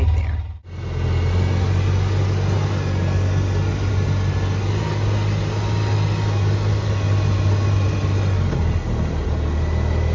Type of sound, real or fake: real